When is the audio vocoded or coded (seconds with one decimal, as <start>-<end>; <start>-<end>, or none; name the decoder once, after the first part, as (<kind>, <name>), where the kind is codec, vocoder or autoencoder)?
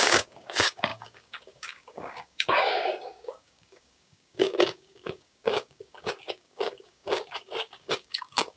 0.0-8.6 (codec, DAC)